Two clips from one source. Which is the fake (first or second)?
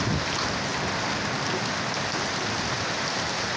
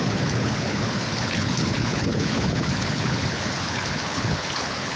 second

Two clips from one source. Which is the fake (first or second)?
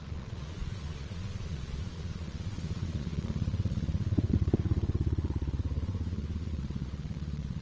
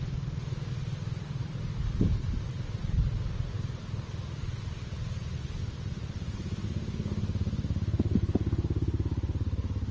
first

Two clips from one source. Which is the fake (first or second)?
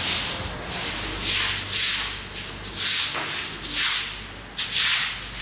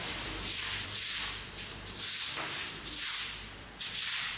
second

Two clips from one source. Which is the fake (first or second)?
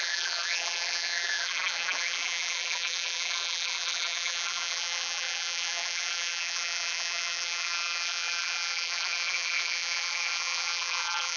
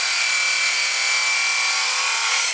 first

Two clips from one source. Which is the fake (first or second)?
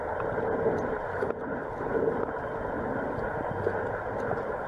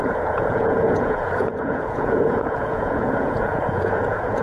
second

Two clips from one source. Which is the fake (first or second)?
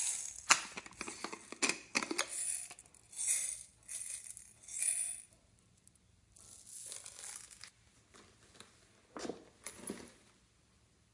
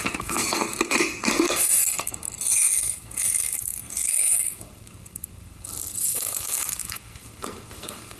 second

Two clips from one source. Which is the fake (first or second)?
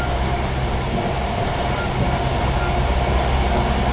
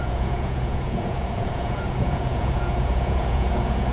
second